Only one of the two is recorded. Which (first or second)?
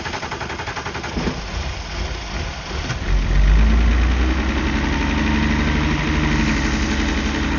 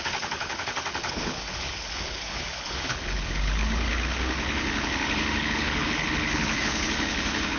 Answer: first